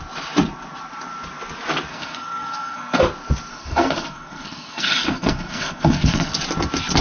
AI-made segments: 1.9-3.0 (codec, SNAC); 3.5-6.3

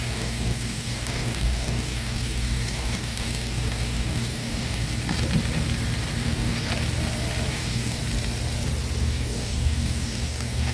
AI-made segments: 0.0-4.8 (codec, DAC); 6.2-6.7; 7.5-8.0; 9.0-10.7

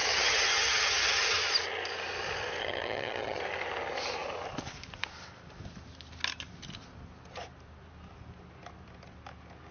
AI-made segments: 0.0-1.4 (vocoder, HiFi-GAN); 2.6-3.4

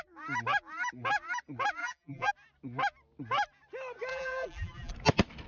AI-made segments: 1.8-2.3 (vocoder, BigVGAN v2); 4.1-4.9

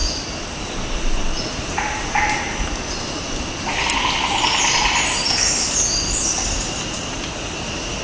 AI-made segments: none